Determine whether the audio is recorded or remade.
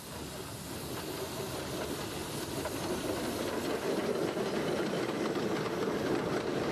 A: recorded